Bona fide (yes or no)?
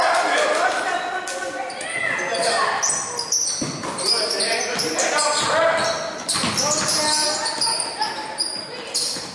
yes